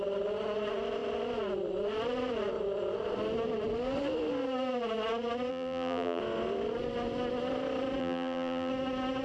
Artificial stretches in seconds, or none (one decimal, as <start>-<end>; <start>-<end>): 5.5-6.2; 8.0-8.7